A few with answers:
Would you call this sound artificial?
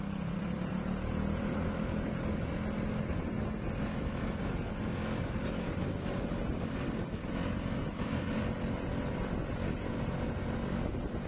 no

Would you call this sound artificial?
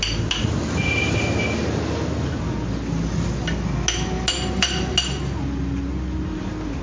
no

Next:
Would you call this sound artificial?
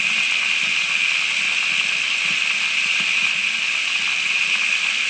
no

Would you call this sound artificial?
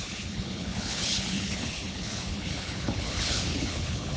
yes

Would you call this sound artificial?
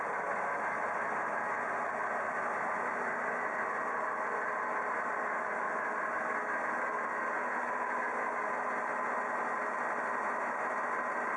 no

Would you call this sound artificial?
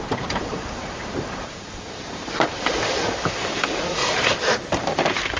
yes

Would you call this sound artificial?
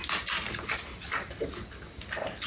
no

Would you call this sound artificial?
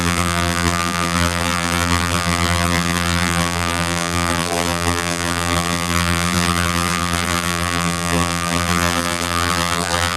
yes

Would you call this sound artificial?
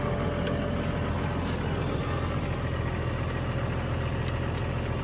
no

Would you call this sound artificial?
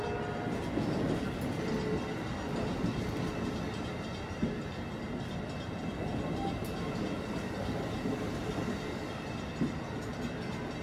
no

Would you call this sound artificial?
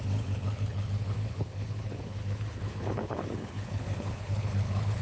yes